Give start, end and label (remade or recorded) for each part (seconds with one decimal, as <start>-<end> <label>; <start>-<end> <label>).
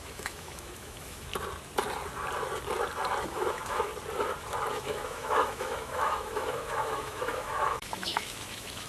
0.0-1.3 remade; 1.3-3.2 recorded; 3.2-3.9 remade; 3.9-4.7 recorded; 4.7-8.9 remade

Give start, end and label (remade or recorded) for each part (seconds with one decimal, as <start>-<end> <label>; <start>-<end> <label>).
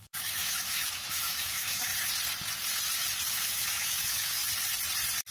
0.0-1.9 remade; 1.9-3.3 recorded; 3.3-4.4 remade; 4.4-5.3 recorded